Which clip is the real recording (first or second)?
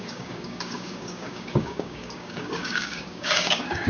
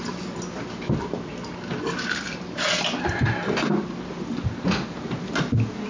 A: second